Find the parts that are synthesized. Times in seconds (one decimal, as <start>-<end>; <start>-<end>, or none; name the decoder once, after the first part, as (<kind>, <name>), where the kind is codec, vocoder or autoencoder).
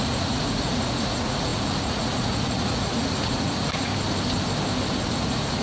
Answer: 0.0-3.9 (vocoder, Vocos); 5.1-5.6